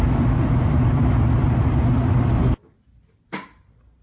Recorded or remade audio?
recorded